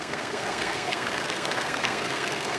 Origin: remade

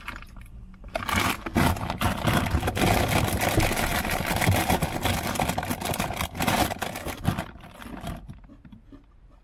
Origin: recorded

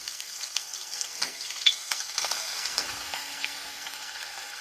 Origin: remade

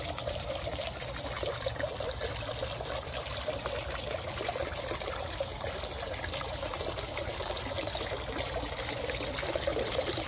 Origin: recorded